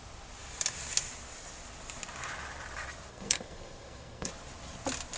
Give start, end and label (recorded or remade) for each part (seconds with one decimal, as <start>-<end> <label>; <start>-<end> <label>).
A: 0.0-3.1 recorded; 3.1-4.3 remade; 4.3-5.2 recorded